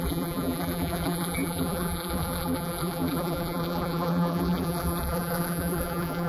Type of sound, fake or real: fake